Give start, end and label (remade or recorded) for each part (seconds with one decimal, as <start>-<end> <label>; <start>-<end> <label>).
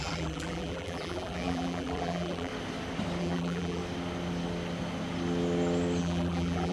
0.0-2.5 remade; 2.5-3.2 recorded; 3.2-3.8 remade; 3.8-6.0 recorded; 6.0-6.7 remade